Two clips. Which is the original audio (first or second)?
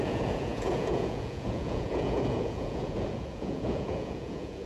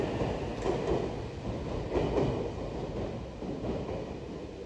second